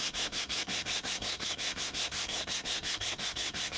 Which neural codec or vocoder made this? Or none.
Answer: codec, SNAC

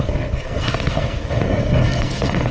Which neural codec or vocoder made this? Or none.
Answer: codec, SNAC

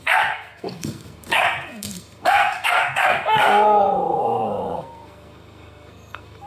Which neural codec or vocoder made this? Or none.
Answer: codec, SNAC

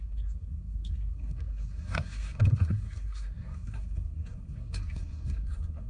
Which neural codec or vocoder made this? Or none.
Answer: codec, SNAC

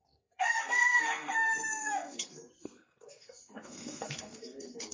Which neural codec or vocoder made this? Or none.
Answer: codec, SNAC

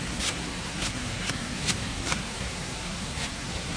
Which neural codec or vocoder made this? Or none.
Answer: codec, SNAC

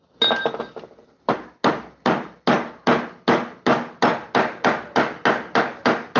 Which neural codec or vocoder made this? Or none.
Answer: none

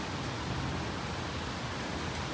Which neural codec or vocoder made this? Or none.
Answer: none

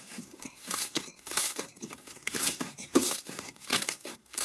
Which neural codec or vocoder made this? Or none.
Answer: codec, SNAC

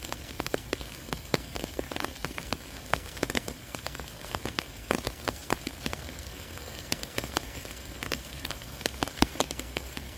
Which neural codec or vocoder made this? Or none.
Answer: codec, SNAC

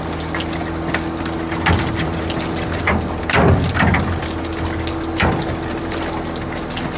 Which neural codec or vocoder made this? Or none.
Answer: none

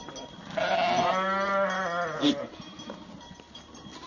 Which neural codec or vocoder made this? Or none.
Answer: none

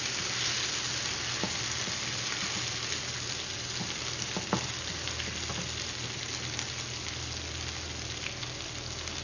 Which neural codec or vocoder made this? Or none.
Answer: none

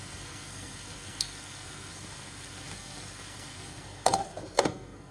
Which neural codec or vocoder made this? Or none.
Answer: codec, SNAC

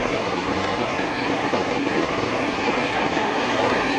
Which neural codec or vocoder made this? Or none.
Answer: codec, SNAC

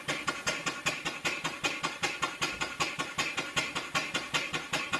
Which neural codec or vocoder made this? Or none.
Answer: none